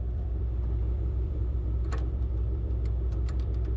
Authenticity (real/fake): fake